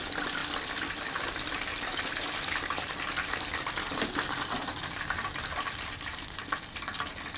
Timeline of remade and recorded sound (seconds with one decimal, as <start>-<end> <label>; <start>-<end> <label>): 0.0-7.4 recorded